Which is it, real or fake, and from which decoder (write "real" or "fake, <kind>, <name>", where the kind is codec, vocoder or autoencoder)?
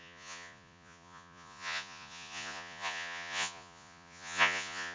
fake, vocoder, Vocos